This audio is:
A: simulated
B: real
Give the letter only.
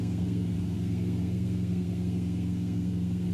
A